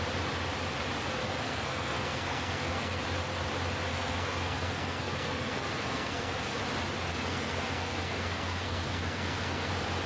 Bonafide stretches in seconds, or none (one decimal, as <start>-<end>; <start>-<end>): 0.0-1.2; 3.0-3.9; 6.6-7.1; 9.7-10.1